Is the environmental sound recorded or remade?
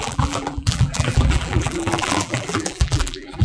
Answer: remade